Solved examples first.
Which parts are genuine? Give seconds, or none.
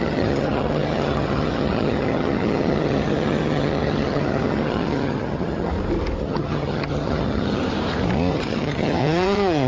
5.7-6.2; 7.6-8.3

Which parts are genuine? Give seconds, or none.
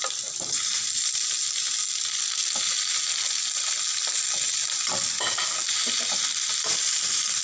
0.0-7.4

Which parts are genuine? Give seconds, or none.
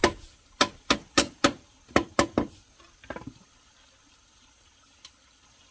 0.0-5.7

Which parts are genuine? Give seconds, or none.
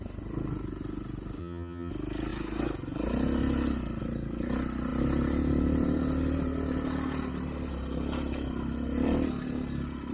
0.0-1.4; 1.9-10.1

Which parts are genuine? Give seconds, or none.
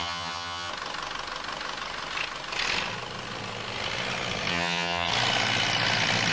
0.7-4.5; 5.1-6.3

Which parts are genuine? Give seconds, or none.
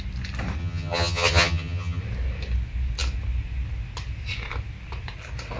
0.0-0.6; 2.0-5.6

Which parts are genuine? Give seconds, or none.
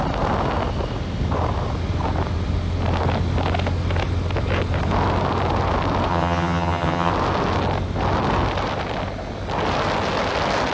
0.0-6.1; 7.1-10.7